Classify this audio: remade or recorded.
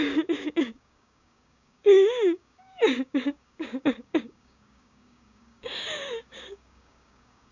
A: remade